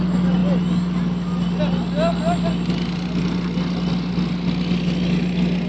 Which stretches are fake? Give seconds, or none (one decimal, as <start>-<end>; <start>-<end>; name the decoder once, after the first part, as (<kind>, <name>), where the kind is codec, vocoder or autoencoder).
none